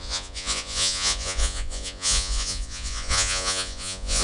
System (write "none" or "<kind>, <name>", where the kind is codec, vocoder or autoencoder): vocoder, Vocos